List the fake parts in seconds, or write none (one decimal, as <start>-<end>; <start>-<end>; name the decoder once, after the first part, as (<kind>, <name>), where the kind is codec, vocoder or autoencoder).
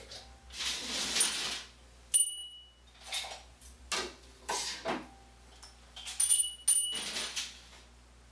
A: none